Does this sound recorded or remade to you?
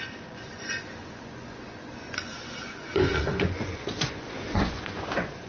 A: remade